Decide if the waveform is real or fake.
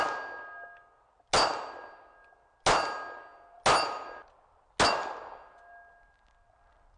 real